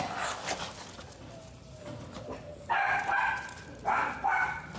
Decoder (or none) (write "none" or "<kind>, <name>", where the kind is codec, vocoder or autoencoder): none